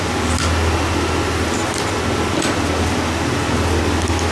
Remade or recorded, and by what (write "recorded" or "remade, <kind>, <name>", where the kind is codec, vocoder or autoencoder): recorded